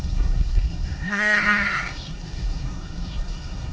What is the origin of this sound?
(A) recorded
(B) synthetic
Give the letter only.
B